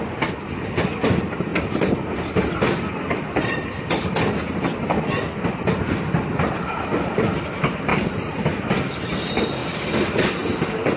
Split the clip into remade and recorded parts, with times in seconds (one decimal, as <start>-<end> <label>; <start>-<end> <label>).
0.0-11.0 recorded